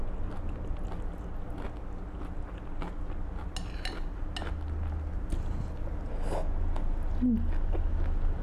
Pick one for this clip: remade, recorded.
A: recorded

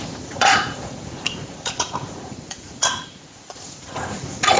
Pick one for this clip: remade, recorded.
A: remade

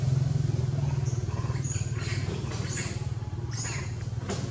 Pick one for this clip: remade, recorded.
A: recorded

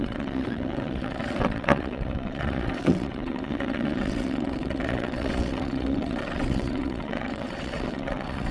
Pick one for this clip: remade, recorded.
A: remade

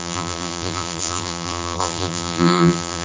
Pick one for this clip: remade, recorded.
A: remade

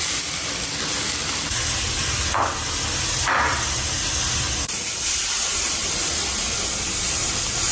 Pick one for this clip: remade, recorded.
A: recorded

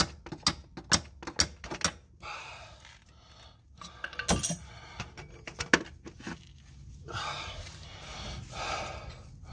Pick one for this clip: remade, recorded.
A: recorded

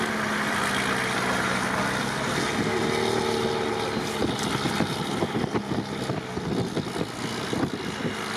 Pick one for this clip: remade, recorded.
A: recorded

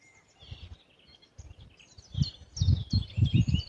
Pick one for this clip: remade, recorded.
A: recorded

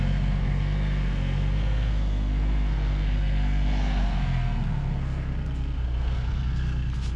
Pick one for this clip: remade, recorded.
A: remade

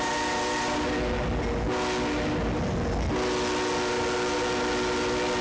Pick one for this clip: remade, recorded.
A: recorded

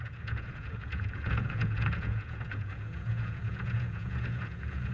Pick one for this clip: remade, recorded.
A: remade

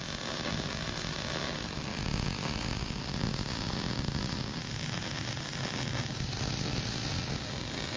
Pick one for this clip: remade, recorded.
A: recorded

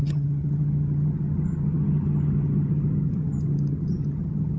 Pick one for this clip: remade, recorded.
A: remade